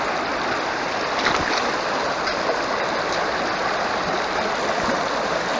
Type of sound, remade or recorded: recorded